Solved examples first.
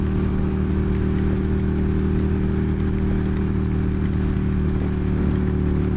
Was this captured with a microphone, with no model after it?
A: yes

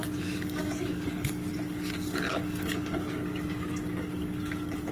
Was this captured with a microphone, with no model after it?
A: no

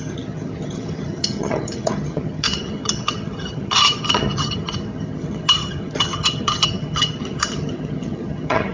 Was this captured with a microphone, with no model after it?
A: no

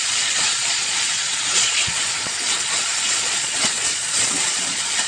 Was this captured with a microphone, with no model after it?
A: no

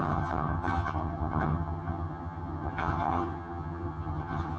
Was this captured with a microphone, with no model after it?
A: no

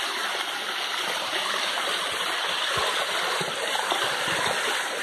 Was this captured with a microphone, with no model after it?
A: yes